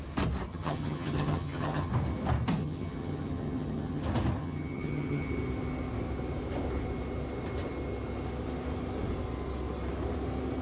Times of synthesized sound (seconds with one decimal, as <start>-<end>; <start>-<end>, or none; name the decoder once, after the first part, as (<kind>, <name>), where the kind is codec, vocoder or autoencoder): 0.5-1.9 (vocoder, HiFi-GAN); 2.6-4.0; 4.4-5.3